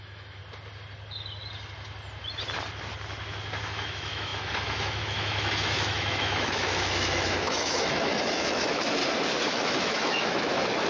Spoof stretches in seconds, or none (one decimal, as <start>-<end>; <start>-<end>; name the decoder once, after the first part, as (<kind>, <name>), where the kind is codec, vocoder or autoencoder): 0.0-0.4 (autoencoder, DAC-VAE); 3.6-9.0; 9.5-10.9